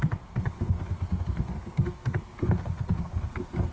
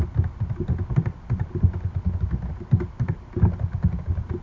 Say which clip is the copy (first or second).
first